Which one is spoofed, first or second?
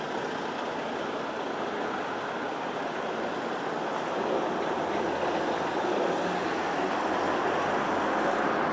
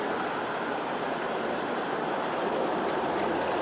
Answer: second